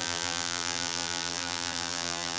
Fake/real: fake